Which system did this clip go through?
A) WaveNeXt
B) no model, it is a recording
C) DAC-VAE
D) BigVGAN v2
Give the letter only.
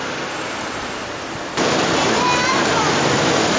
B